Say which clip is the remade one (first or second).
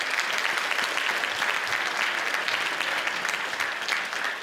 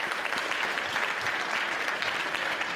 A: second